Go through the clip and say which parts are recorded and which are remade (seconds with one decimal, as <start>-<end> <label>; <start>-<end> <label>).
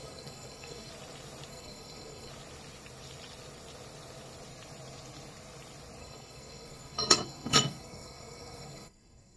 0.0-0.9 remade; 0.9-1.5 recorded; 1.5-2.3 remade; 2.3-6.0 recorded; 6.0-9.4 remade